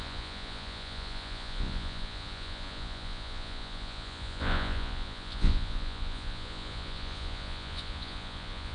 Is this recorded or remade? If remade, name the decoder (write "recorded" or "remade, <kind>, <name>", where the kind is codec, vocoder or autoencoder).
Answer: remade, vocoder, Vocos